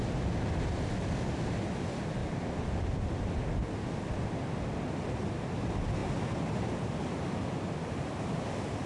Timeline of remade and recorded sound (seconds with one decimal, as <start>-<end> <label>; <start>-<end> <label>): 0.0-8.9 recorded